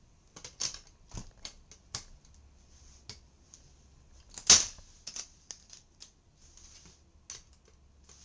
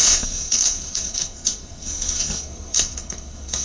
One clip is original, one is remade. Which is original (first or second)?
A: first